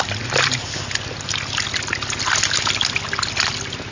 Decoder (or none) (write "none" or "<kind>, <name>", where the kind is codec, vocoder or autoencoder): none